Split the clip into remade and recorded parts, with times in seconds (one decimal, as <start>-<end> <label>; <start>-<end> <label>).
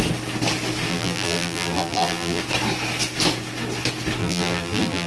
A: 0.0-0.9 recorded; 0.9-2.4 remade; 2.4-4.2 recorded; 4.2-5.1 remade